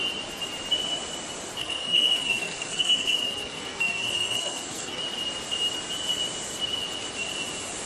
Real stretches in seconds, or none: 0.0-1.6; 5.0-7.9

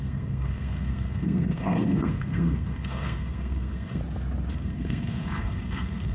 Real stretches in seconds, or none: 4.0-4.5

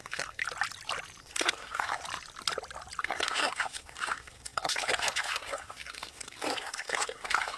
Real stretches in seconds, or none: 0.4-1.2; 2.0-3.0

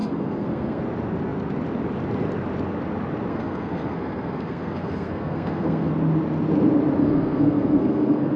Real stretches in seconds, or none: 0.8-3.3; 5.9-7.0

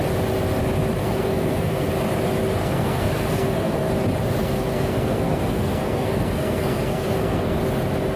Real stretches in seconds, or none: 0.0-1.0; 1.9-2.6; 3.9-4.4; 7.6-8.2

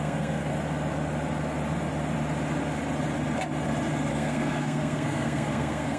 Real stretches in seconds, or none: 0.5-4.1

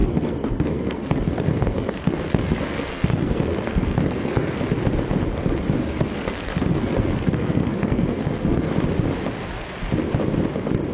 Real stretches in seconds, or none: 4.6-5.8; 8.7-10.9

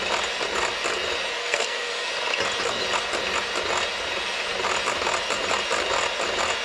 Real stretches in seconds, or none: 0.0-1.4; 2.1-6.6